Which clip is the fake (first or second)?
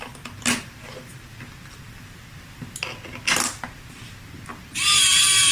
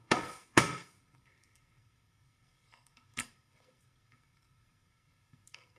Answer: second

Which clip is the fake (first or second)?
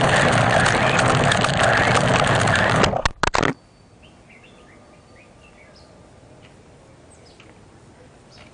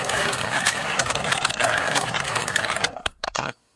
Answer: second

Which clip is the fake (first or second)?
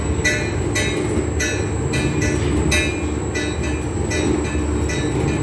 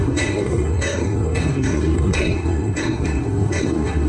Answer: second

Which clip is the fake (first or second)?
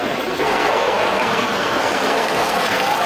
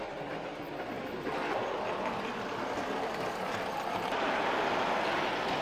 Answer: first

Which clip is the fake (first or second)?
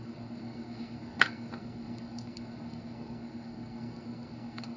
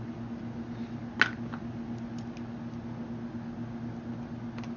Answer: first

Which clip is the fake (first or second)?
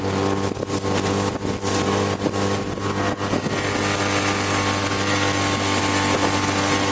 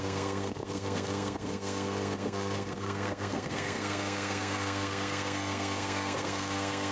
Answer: second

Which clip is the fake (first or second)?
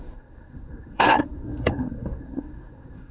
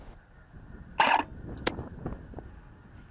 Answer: first